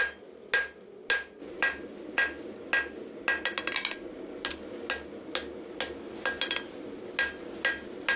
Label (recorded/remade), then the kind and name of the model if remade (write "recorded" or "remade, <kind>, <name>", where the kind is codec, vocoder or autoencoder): recorded